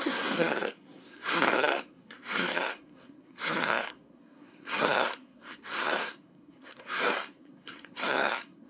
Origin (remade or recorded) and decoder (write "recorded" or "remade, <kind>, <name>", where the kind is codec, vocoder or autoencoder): remade, codec, SNAC